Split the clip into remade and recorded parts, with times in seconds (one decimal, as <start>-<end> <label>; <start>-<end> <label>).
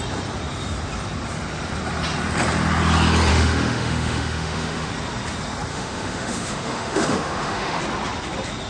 0.0-3.3 recorded; 3.3-4.9 remade; 4.9-5.7 recorded; 5.7-7.8 remade; 7.8-8.7 recorded